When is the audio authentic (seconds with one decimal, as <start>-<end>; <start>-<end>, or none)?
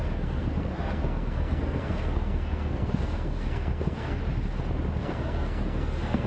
4.2-5.0